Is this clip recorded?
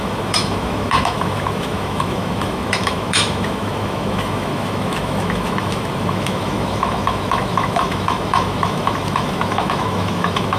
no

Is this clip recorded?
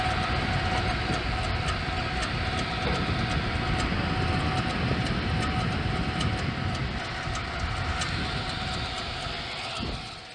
yes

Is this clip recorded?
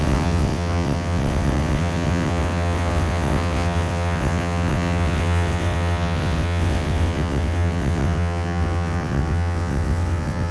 no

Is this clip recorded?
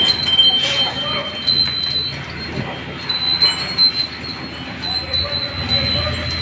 yes